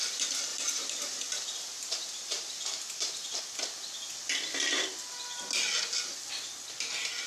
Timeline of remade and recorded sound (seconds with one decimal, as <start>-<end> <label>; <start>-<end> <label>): 0.0-0.5 recorded; 0.5-3.4 remade; 3.4-7.3 recorded